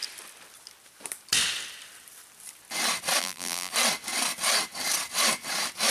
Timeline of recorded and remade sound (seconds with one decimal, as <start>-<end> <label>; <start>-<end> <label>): 0.0-3.2 recorded; 3.2-3.7 remade; 3.7-5.9 recorded